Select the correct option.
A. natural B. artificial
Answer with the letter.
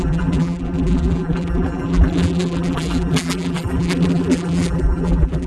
B